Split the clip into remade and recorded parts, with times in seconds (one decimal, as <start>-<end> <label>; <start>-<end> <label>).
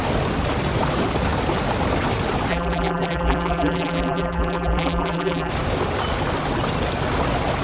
0.0-2.5 recorded; 2.5-5.5 remade; 5.5-7.6 recorded